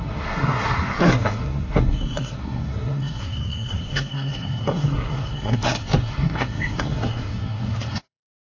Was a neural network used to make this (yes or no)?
yes